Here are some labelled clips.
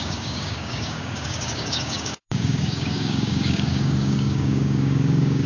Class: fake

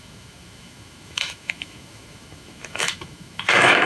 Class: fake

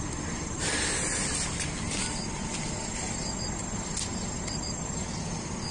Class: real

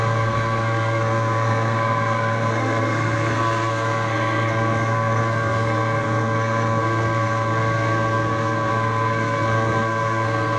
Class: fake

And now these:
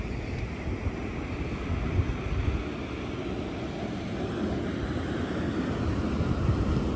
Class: real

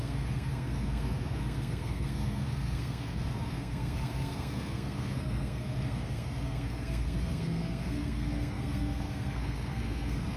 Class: fake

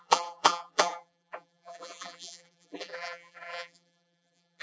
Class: fake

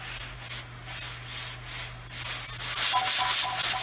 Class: real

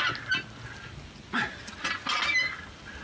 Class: real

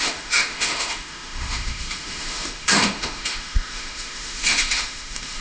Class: fake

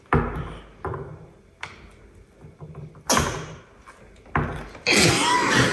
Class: real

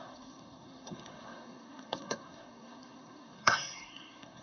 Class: fake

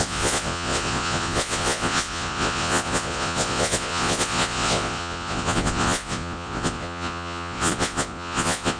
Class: fake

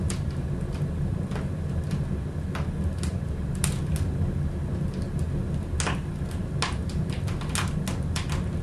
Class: real